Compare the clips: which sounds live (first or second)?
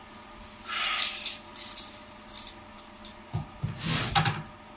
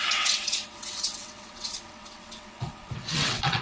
first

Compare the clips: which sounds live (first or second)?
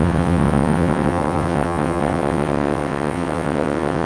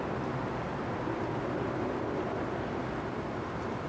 second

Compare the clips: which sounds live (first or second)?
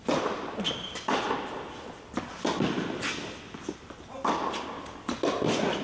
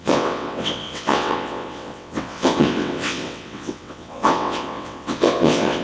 first